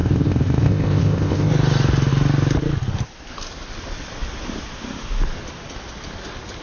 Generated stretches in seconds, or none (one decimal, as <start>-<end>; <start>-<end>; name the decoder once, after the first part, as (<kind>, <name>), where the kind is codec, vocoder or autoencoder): 0.0-1.5 (codec, ZipCodec)